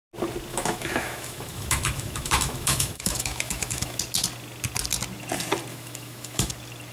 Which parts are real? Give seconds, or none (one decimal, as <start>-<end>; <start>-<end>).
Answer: 0.0-0.5; 4.0-5.7; 6.5-6.9